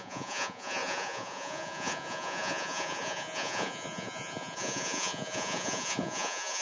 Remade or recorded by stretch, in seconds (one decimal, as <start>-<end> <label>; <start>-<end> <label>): 0.0-6.6 remade